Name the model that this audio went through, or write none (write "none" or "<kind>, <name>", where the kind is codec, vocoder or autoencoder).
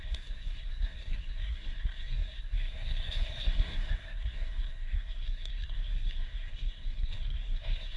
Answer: codec, SNAC